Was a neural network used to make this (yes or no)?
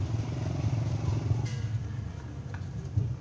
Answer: no